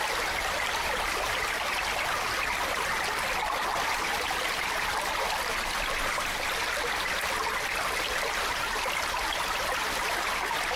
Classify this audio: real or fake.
real